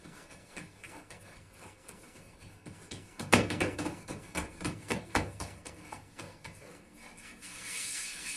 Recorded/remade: remade